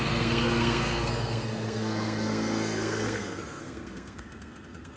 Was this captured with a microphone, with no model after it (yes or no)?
no